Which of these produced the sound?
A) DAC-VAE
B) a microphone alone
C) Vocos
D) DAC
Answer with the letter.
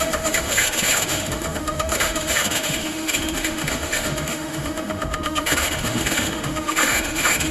A